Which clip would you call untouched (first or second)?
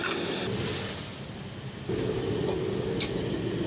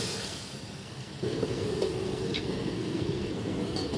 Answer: first